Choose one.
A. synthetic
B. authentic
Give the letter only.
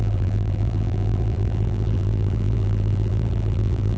A